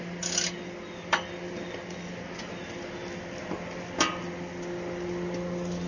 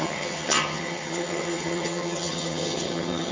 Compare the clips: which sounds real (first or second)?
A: first